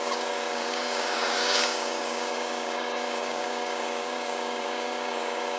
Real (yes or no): no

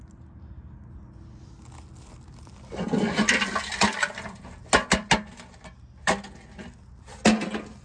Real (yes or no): yes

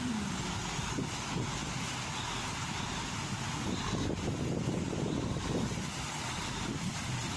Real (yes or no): yes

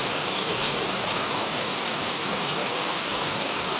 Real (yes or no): no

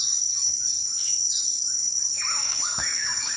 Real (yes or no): no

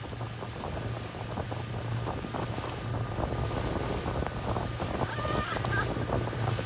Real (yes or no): yes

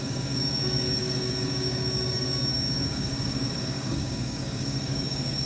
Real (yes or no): no